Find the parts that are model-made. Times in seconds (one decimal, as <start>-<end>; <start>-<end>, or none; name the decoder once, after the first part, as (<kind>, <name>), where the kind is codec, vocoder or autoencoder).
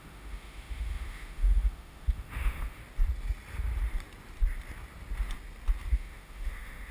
0.0-2.8 (autoencoder, DAC-VAE); 5.9-6.9